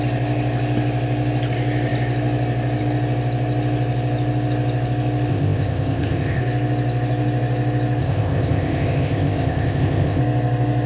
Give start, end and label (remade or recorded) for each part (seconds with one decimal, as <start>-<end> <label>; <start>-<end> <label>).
0.0-5.3 recorded; 5.3-6.4 remade; 6.4-8.0 recorded; 8.0-10.2 remade; 10.2-10.9 recorded